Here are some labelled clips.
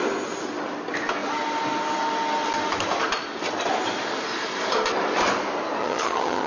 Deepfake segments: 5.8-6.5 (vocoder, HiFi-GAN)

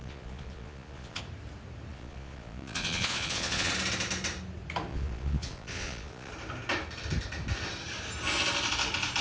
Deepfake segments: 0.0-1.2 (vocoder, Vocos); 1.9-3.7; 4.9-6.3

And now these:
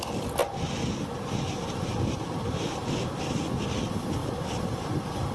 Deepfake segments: 4.2-5.3 (vocoder, BigVGAN v2)

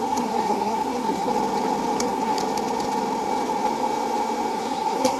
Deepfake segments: 0.0-1.3 (codec, SNAC); 2.0-2.4; 4.5-5.2

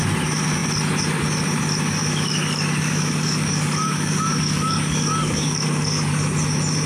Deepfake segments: 2.0-6.1 (codec, DAC)

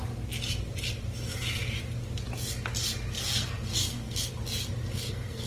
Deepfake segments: 3.2-4.3 (codec, SNAC); 4.9-5.5